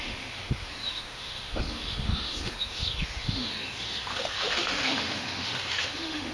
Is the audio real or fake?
fake